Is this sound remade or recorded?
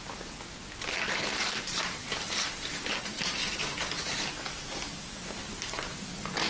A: recorded